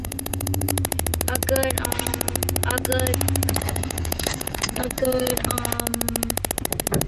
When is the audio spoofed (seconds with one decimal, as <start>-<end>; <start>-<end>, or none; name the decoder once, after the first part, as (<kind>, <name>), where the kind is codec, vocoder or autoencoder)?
0.0-0.7 (codec, DAC); 3.6-5.3